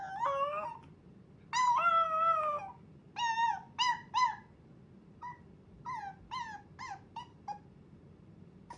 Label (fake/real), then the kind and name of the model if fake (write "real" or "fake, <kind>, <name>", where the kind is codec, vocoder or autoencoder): real